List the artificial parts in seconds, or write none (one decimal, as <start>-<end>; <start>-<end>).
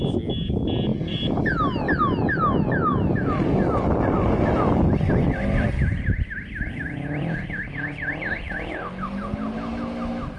0.9-2.0; 2.9-8.2